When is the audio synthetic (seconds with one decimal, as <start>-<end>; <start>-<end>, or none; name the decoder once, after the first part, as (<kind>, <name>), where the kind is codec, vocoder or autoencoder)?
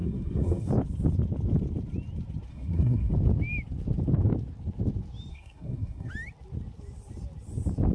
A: 0.0-0.7 (codec, SNAC); 2.5-3.1; 5.3-6.1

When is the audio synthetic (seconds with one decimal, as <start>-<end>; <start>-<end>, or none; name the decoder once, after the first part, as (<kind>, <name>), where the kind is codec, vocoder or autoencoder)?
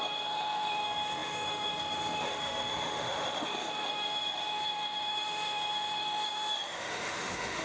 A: 0.0-7.6 (autoencoder, DAC-VAE)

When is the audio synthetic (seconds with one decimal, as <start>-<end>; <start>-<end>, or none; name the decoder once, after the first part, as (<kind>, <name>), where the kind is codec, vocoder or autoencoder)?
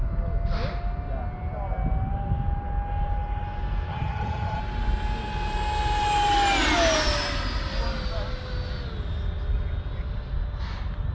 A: 3.9-4.6 (vocoder, HiFi-GAN)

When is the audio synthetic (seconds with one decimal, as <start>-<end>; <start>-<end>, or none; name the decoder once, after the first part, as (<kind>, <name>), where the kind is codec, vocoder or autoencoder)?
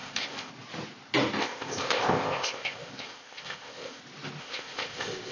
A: 0.0-0.5 (codec, ZipCodec); 1.4-4.0; 4.4-5.3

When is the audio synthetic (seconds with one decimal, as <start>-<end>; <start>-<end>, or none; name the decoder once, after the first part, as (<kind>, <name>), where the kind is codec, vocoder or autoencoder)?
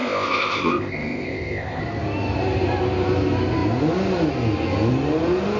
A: 0.0-1.8 (codec, ZipCodec)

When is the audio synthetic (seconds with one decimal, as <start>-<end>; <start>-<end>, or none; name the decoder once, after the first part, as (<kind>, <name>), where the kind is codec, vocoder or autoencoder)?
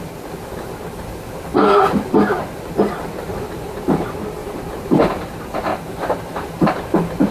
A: 4.4-5.0 (vocoder, BigVGAN v2); 5.7-7.3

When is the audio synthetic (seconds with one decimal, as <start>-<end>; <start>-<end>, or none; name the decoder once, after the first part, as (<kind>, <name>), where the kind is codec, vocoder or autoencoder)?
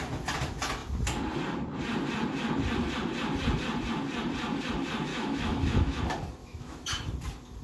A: 5.1-6.0 (autoencoder, DAC-VAE); 6.4-7.0